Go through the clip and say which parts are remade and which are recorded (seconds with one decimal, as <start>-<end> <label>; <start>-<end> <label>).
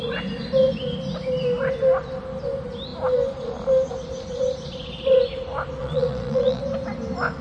0.0-5.8 recorded; 5.8-6.6 remade; 6.6-7.4 recorded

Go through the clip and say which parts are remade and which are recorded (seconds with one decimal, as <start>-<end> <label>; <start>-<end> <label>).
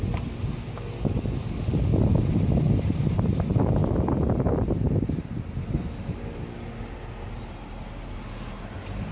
0.0-9.1 recorded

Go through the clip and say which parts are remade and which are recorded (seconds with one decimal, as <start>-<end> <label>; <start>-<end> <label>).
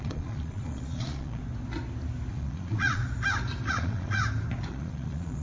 0.0-1.4 remade; 1.4-2.3 recorded; 2.3-3.0 remade; 3.0-3.7 recorded; 3.7-4.2 remade; 4.2-4.7 recorded; 4.7-5.4 remade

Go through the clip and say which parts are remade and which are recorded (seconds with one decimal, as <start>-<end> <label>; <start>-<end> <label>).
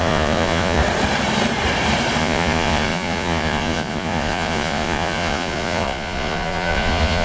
0.0-0.8 remade; 0.8-2.2 recorded; 2.2-7.2 remade